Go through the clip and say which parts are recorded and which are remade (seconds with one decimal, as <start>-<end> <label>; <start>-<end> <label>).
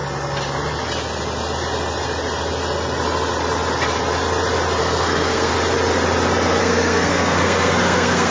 0.0-4.8 recorded; 4.8-5.5 remade; 5.5-6.6 recorded; 6.6-8.3 remade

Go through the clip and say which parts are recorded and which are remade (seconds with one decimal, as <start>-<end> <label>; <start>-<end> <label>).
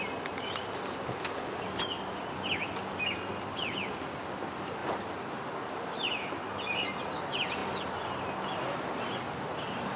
0.0-10.0 recorded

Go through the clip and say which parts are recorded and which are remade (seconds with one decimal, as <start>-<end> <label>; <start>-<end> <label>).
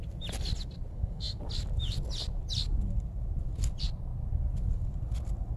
0.0-0.9 recorded; 0.9-1.4 remade; 1.4-5.6 recorded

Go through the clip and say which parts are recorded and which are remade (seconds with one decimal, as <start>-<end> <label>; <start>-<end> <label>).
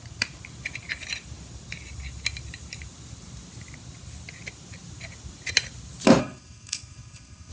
0.0-6.2 recorded; 6.2-7.5 remade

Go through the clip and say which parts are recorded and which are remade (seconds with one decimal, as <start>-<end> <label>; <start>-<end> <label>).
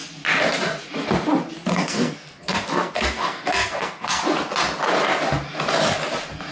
0.0-1.7 recorded; 1.7-4.2 remade; 4.2-6.5 recorded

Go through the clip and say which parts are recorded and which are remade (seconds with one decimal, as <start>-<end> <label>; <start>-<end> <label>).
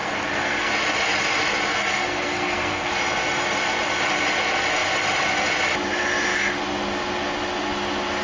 0.0-0.7 remade; 0.7-1.7 recorded; 1.7-2.9 remade; 2.9-8.2 recorded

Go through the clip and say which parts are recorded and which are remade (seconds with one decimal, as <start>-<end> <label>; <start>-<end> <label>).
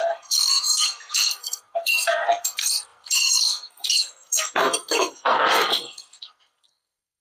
0.0-7.2 remade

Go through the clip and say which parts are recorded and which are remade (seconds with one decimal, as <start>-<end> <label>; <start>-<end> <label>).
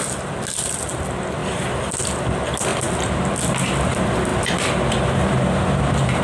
0.0-6.2 recorded